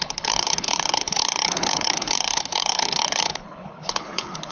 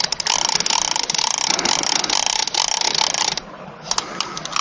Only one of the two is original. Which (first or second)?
second